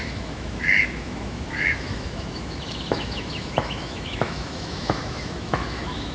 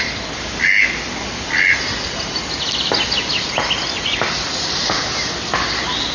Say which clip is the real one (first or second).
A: second